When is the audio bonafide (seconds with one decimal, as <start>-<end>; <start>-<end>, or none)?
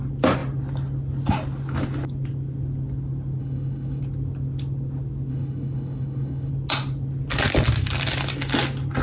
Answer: 0.0-3.4; 4.0-5.3; 6.5-9.0